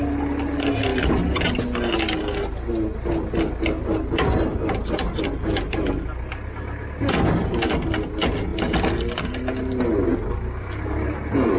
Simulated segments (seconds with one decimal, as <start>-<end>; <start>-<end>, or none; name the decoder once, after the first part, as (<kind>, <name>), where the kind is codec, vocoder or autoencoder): none